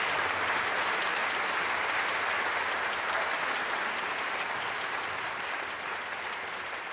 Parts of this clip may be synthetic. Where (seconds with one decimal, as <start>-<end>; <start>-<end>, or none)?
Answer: 0.0-1.2; 4.7-6.9